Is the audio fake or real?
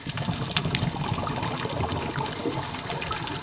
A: real